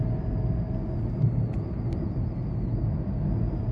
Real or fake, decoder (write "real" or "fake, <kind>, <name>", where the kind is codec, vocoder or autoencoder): real